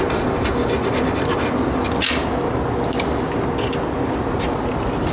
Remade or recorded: recorded